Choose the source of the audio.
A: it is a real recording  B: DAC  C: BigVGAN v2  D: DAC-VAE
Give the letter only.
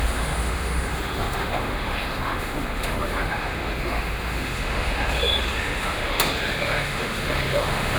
D